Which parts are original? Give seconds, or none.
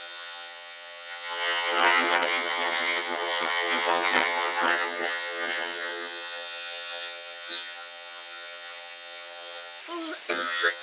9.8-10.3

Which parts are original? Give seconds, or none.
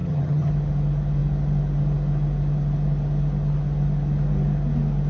0.5-5.1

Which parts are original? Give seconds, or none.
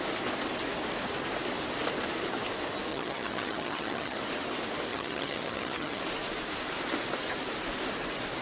0.0-2.9; 4.2-4.9; 6.0-8.4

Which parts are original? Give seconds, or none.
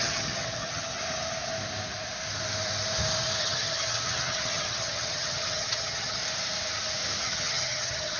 1.0-3.4; 6.2-7.2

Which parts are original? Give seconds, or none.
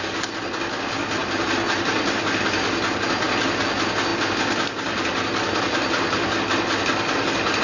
0.0-7.6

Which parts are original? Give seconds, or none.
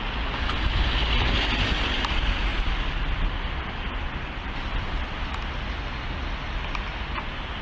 0.0-7.6